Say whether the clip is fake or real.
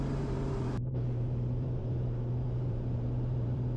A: fake